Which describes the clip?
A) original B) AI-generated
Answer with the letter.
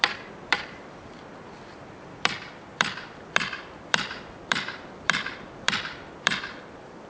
B